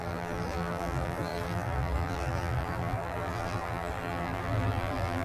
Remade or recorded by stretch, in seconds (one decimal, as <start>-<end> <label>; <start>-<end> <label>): 0.0-5.2 remade